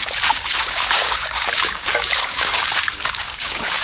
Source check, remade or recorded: remade